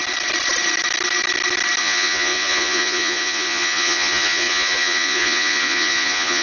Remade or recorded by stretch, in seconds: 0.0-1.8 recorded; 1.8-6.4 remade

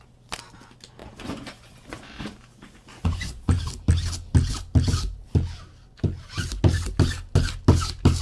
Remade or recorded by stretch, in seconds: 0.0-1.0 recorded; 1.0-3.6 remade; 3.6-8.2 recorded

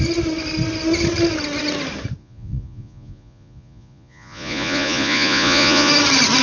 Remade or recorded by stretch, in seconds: 0.0-2.2 recorded; 2.2-5.9 remade; 5.9-6.4 recorded

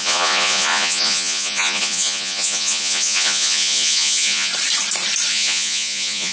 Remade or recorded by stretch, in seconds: 0.0-4.5 remade; 4.5-5.3 recorded; 5.3-6.3 remade